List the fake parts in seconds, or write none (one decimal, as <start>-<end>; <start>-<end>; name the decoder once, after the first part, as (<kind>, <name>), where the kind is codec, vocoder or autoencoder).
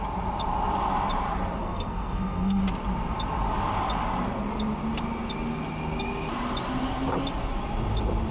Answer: 1.6-2.6 (codec, SNAC)